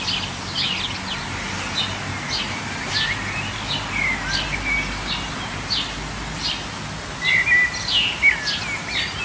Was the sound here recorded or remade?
recorded